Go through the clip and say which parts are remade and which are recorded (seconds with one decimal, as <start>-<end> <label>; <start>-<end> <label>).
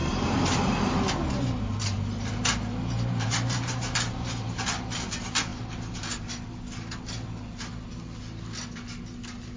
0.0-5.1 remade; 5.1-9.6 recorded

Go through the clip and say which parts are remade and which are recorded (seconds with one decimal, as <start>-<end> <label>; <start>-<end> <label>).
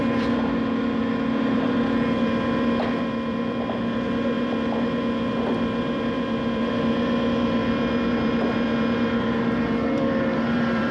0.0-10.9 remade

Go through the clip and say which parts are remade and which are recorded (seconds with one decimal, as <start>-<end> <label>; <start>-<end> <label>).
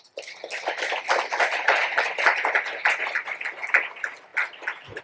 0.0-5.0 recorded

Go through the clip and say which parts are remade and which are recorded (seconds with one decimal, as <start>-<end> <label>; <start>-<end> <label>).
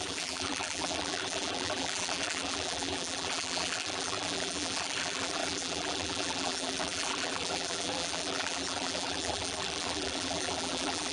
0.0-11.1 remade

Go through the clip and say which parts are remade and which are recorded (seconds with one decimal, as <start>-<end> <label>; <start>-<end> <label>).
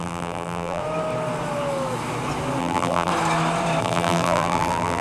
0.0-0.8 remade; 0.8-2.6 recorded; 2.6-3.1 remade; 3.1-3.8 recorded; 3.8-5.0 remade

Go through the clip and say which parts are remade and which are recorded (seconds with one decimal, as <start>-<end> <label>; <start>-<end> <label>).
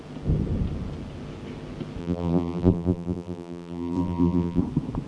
0.0-2.0 recorded; 2.0-4.6 remade; 4.6-5.1 recorded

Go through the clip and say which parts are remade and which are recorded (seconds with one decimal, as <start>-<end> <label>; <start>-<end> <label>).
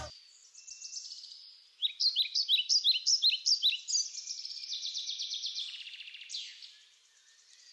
0.0-1.8 recorded; 1.8-2.4 remade; 2.4-3.6 recorded; 3.6-6.3 remade; 6.3-7.7 recorded